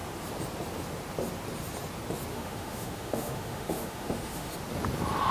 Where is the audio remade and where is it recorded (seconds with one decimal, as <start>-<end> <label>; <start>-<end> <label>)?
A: 0.0-2.3 recorded; 2.3-4.5 remade; 4.5-5.3 recorded